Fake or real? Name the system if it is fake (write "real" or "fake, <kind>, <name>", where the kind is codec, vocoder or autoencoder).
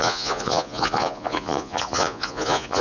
fake, vocoder, Vocos